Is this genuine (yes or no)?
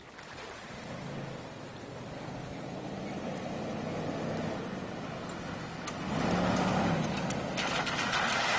yes